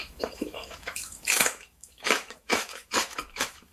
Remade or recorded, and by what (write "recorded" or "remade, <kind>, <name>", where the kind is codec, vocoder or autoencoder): remade, autoencoder, DAC-VAE